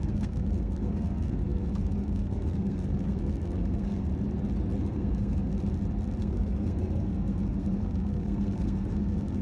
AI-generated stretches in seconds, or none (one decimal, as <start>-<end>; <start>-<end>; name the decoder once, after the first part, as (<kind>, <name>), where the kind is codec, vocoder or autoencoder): 0.0-4.1 (codec, SNAC); 4.8-5.5; 6.2-9.4